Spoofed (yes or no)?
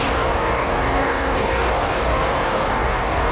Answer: yes